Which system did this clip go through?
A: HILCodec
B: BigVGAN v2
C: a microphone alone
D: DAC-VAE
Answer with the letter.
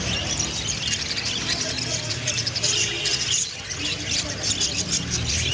B